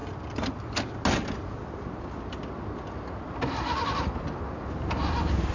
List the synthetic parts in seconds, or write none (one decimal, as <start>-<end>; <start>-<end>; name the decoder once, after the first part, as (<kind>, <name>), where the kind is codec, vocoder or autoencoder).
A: none